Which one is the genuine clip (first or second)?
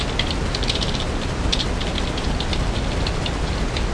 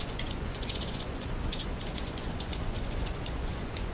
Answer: first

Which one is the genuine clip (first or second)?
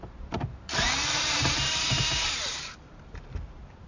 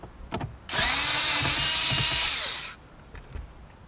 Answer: second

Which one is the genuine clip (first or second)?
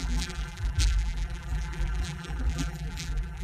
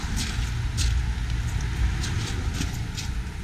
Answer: second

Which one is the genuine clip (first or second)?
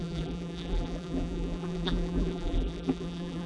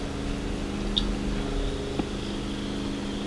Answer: second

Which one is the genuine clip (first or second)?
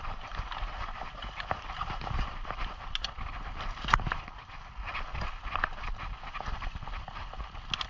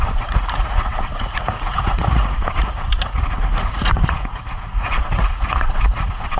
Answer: first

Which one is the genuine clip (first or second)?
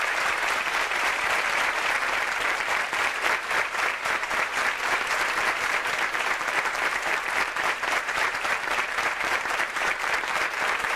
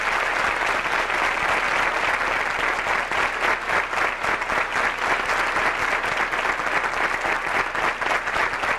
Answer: second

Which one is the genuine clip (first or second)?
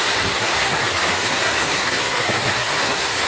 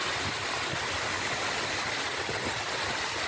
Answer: second